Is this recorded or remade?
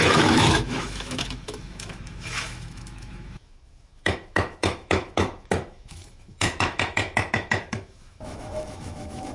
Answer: remade